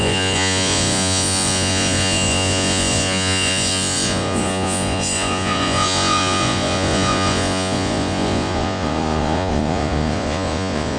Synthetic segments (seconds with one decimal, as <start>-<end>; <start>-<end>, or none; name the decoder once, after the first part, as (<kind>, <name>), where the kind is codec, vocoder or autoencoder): 0.0-11.0 (vocoder, Vocos)